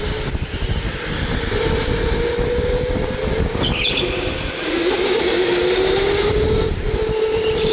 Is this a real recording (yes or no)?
yes